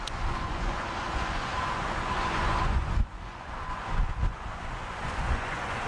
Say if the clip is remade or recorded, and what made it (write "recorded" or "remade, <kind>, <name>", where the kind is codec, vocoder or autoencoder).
remade, vocoder, Vocos